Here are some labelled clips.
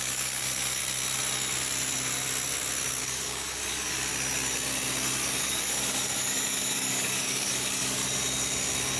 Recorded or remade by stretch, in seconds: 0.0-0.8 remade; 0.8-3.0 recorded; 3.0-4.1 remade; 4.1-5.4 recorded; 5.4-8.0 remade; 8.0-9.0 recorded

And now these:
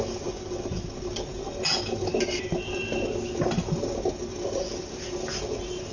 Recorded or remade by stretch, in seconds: 0.0-5.9 recorded

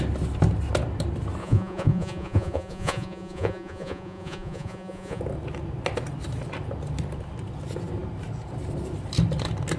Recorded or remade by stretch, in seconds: 0.0-1.4 recorded; 1.4-5.2 remade; 5.2-9.8 recorded

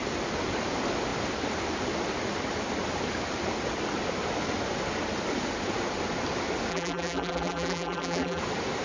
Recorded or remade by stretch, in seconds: 0.0-6.7 recorded; 6.7-8.4 remade; 8.4-8.8 recorded

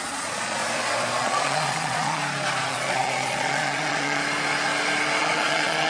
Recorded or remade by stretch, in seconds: 0.0-0.6 remade; 0.6-1.2 recorded; 1.2-2.2 remade; 2.2-2.7 recorded; 2.7-4.2 remade; 4.2-5.2 recorded; 5.2-5.9 remade